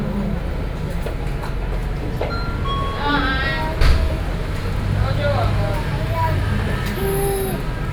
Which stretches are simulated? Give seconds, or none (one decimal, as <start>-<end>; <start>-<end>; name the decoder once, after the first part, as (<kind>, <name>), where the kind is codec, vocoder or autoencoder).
1.8-2.3 (vocoder, BigVGAN v2); 5.9-6.5